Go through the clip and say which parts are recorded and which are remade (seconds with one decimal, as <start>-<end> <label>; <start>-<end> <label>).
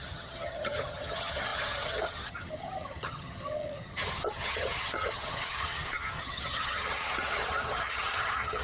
0.0-8.6 remade